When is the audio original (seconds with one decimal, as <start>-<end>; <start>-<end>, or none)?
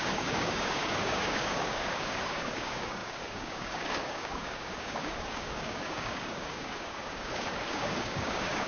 none